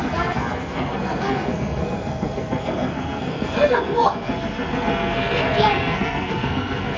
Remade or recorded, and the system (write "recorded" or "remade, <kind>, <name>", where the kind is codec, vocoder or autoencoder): remade, codec, SNAC